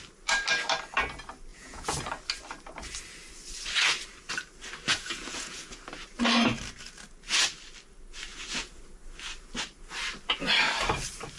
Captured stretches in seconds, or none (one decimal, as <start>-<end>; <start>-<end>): 0.0-1.5; 2.0-4.9; 5.8-8.3; 8.8-11.4